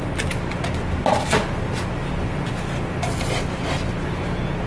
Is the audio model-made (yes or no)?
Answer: no